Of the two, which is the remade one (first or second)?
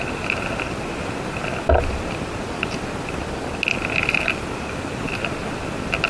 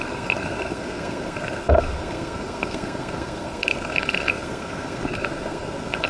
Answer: second